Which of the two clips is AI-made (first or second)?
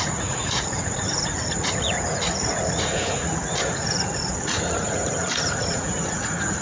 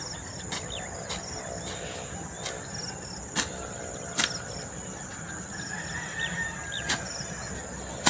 first